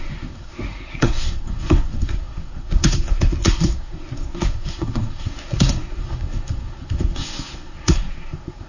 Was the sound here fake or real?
fake